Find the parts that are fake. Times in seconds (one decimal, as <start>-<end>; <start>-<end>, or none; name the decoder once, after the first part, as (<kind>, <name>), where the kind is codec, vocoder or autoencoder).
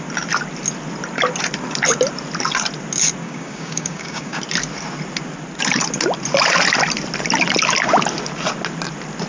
3.2-4.4 (codec, DAC)